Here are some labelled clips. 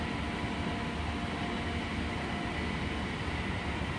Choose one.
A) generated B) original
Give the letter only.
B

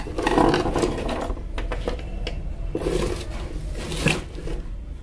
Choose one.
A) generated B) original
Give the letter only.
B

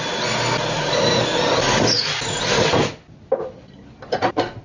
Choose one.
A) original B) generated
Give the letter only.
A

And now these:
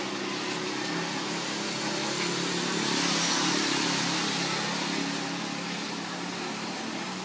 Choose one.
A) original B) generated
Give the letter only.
A